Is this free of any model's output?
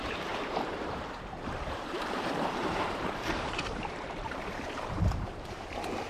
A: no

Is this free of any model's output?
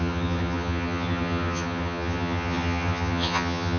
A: no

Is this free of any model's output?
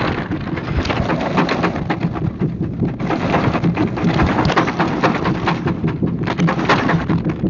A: yes